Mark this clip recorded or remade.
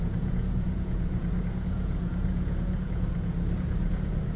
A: remade